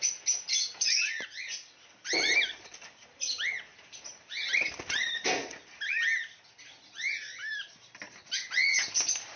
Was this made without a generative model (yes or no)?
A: yes